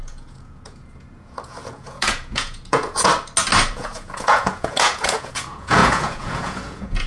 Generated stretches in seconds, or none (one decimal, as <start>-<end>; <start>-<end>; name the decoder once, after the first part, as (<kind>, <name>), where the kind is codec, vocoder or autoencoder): 0.0-3.1 (vocoder, Vocos); 3.7-7.1